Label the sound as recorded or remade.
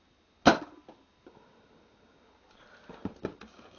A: recorded